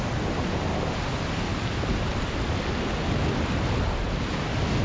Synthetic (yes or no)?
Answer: no